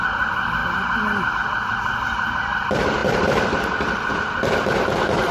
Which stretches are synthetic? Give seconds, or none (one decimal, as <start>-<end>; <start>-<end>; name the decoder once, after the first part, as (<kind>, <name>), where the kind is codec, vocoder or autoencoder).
0.0-0.6 (vocoder, BigVGAN v2); 1.3-5.3